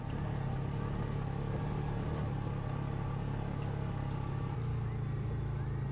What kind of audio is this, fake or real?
real